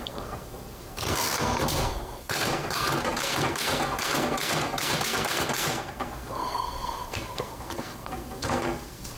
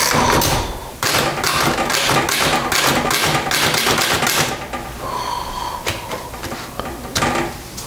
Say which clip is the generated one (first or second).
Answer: first